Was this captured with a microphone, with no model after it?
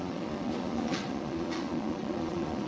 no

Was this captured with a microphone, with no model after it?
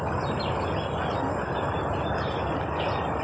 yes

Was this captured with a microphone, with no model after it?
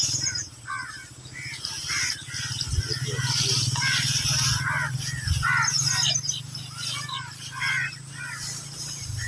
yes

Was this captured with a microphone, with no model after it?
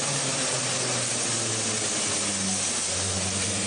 yes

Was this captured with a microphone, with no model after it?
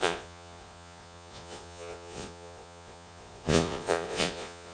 no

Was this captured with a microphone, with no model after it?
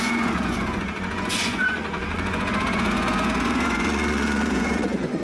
no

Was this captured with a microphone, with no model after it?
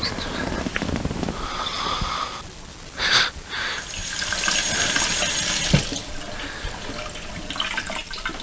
yes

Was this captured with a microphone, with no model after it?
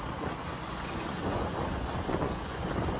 no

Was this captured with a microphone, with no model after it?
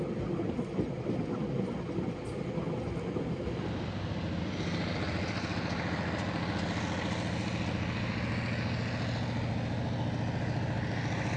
yes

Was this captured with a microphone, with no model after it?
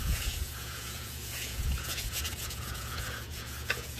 no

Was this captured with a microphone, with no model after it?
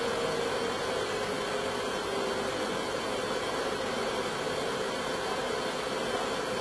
yes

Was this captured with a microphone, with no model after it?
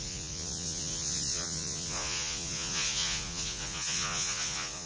no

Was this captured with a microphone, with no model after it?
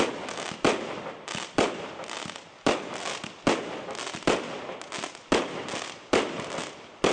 yes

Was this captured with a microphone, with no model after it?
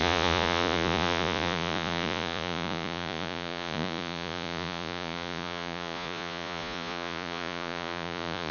no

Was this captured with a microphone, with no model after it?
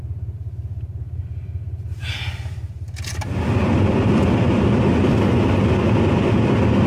yes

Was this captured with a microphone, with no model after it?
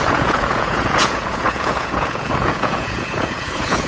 no